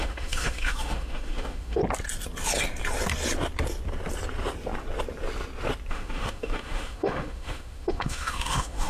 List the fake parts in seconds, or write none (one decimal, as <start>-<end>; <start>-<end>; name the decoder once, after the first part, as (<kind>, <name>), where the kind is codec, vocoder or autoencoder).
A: 0.0-1.8 (autoencoder, DAC-VAE); 5.9-8.9